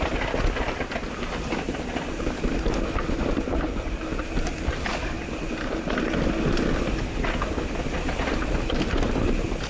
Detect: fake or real real